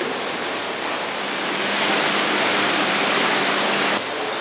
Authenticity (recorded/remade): recorded